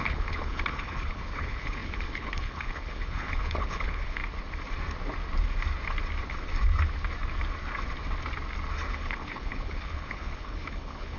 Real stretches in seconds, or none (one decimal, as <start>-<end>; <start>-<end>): 4.2-8.9